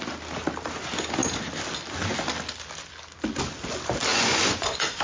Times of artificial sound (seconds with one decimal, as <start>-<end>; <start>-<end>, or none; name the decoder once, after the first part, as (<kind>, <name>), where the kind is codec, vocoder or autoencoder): 4.1-5.0 (vocoder, Vocos)